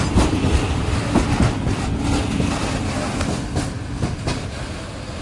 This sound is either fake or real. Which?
real